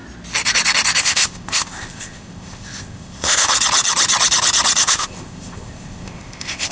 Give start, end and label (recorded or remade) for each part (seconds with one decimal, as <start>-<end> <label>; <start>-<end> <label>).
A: 0.0-1.0 recorded; 1.0-3.5 remade; 3.5-4.8 recorded; 4.8-6.7 remade